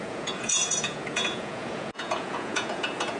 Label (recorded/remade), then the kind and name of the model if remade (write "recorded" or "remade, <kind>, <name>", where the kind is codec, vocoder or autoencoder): remade, vocoder, Vocos